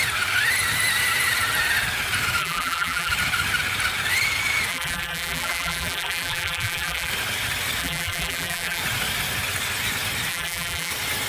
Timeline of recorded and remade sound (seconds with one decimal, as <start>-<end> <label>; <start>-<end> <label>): 0.0-2.4 recorded; 2.4-3.1 remade; 3.1-4.7 recorded; 4.7-7.1 remade; 7.1-7.8 recorded; 7.8-8.8 remade; 8.8-10.3 recorded; 10.3-10.9 remade; 10.9-11.3 recorded

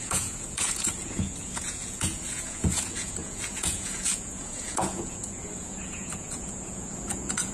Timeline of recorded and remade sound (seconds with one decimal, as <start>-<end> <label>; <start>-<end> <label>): 0.0-7.5 remade

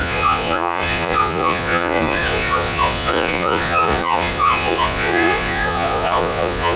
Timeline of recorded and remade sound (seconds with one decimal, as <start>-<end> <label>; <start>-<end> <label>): 0.0-6.8 remade

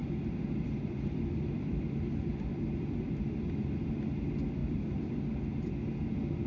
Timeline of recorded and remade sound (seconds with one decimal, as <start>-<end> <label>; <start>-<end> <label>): 0.0-3.9 remade; 3.9-4.6 recorded; 4.6-5.2 remade; 5.2-6.5 recorded

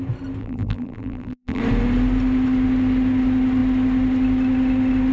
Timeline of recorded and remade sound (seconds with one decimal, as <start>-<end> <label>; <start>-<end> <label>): 0.0-0.4 recorded; 0.4-1.6 remade; 1.6-5.1 recorded

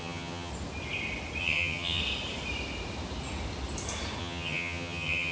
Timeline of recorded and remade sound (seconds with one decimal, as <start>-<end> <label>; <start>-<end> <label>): 0.0-0.5 remade; 0.5-1.4 recorded; 1.4-2.0 remade; 2.0-4.2 recorded; 4.2-5.3 remade

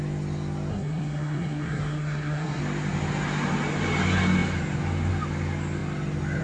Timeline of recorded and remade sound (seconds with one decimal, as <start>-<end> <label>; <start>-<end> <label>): 0.0-0.7 recorded; 0.7-2.6 remade; 2.6-6.4 recorded

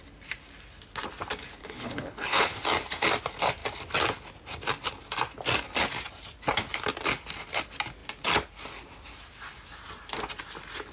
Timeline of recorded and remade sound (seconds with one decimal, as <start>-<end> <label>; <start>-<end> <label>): 0.0-1.6 recorded; 1.6-2.6 remade; 2.6-10.9 recorded